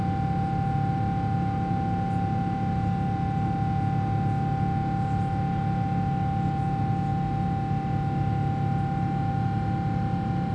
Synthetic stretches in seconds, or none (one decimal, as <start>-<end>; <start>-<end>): none